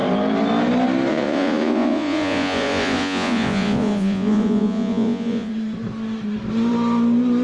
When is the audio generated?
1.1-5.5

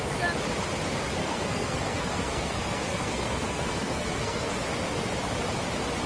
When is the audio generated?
1.2-4.5

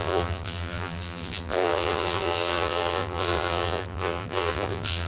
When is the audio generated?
0.0-5.1

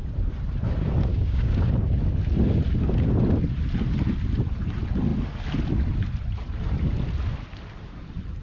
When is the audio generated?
1.1-1.7

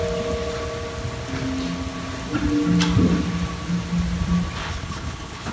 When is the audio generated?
4.6-5.5

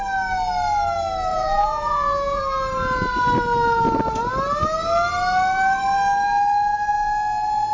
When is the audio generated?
1.3-2.4